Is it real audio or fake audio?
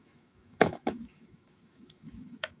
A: fake